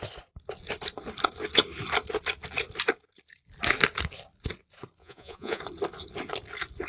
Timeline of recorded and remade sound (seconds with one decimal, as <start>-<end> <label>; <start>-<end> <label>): 0.0-5.0 recorded; 5.0-5.6 remade; 5.6-6.9 recorded